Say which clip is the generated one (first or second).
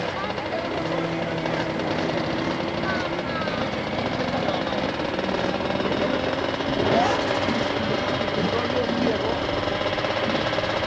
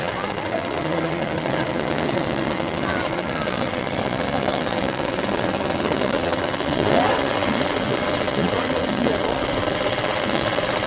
second